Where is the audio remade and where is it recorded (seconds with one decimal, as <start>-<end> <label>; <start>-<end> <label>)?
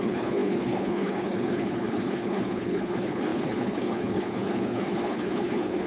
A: 0.0-5.9 remade